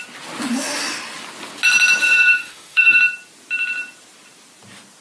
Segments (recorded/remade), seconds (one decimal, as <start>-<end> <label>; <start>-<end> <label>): 0.0-2.0 recorded; 2.0-3.0 remade; 3.0-5.0 recorded